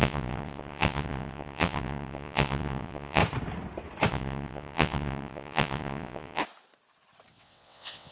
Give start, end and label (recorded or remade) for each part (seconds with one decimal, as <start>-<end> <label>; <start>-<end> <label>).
0.0-3.2 remade; 3.2-4.1 recorded; 4.1-6.4 remade; 6.4-7.3 recorded; 7.3-8.1 remade